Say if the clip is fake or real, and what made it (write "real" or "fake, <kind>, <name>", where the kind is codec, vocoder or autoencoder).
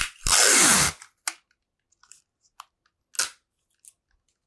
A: real